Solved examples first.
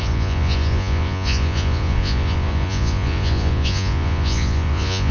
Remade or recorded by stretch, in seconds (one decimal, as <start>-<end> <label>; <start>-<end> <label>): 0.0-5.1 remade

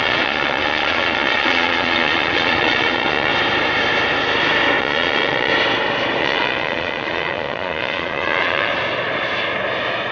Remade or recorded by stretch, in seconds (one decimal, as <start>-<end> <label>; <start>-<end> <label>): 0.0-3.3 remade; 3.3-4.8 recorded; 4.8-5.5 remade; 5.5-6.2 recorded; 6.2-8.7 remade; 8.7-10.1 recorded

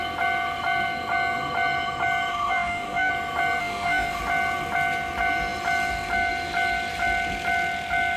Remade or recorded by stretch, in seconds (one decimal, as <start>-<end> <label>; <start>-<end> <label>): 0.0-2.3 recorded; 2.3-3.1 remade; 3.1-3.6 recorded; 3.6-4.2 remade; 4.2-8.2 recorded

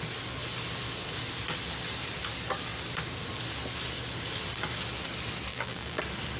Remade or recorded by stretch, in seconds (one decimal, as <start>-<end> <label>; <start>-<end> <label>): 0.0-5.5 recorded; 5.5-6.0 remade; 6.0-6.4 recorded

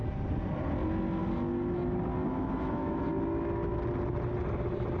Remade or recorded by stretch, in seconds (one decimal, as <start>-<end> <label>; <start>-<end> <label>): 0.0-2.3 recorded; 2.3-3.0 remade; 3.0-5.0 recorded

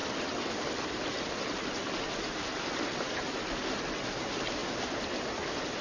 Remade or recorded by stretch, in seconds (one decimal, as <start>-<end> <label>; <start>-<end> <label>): 0.0-3.4 remade; 3.4-4.6 recorded; 4.6-5.8 remade